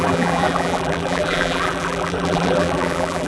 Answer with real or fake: fake